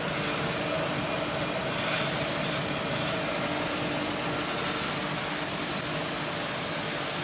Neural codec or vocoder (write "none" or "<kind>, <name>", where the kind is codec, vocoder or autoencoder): none